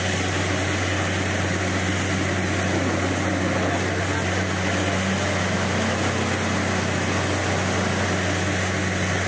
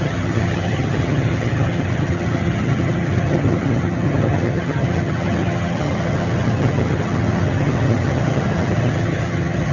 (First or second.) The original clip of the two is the first